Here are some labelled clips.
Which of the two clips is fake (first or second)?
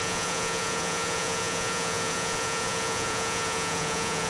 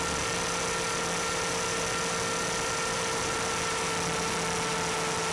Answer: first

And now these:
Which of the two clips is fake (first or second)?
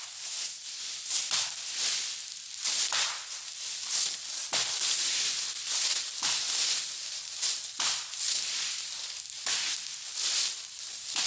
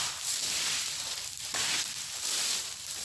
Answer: second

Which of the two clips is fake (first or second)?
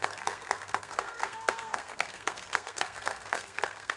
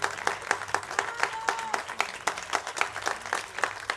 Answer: first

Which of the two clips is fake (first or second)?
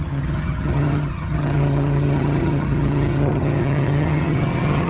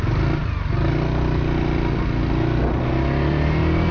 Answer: first